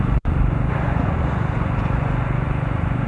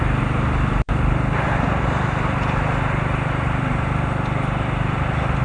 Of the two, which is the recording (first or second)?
second